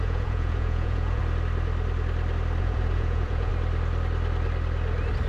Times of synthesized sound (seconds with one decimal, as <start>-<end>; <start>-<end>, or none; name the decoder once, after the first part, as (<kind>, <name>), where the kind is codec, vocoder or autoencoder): 0.0-1.2 (vocoder, Vocos); 2.6-3.5